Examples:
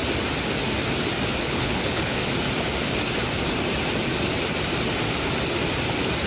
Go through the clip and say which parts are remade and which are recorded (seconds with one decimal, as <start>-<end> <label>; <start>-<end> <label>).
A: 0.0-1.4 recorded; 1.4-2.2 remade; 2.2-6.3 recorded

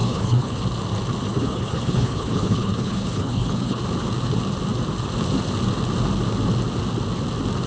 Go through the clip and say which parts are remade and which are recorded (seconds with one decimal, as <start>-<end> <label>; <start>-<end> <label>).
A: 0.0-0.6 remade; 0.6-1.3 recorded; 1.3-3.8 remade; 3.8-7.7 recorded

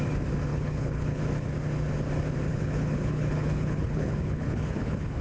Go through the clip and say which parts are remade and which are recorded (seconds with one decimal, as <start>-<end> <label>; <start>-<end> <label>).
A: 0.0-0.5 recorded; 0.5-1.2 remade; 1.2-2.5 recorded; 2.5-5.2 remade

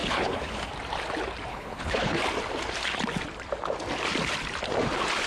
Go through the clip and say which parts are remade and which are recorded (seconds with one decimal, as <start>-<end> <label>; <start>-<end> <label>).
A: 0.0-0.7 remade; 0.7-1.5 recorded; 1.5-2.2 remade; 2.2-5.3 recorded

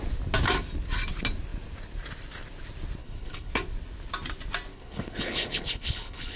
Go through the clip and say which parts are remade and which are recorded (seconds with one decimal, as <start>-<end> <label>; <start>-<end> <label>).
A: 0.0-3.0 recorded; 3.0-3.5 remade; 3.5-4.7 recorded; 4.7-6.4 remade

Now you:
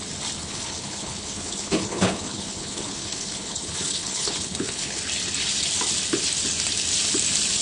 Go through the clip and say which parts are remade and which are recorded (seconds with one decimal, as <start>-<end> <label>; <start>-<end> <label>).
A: 0.0-0.4 recorded; 0.4-5.0 remade; 5.0-7.6 recorded

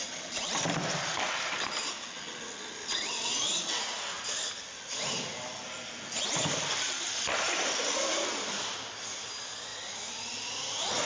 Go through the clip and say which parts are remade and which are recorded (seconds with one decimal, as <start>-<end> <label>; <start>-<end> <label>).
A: 0.0-11.1 recorded